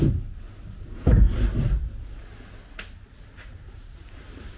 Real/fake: real